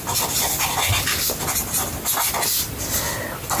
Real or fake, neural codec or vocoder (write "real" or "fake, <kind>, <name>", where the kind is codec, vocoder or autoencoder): real